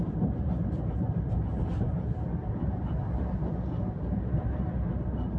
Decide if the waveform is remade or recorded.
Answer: recorded